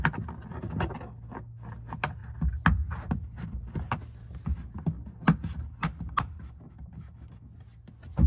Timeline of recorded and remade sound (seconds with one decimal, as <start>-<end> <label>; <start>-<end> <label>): 0.0-8.3 recorded